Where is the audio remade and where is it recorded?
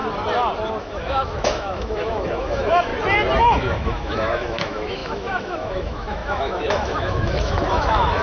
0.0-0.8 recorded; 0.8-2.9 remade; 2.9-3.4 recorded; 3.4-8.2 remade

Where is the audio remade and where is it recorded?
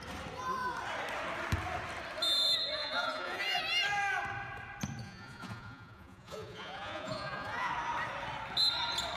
0.0-2.8 recorded; 2.8-3.6 remade; 3.6-5.0 recorded; 5.0-7.7 remade; 7.7-9.2 recorded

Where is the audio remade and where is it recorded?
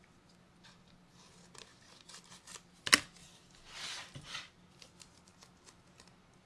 0.0-6.5 recorded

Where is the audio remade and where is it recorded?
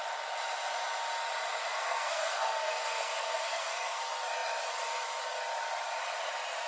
0.0-1.6 recorded; 1.6-4.0 remade; 4.0-6.7 recorded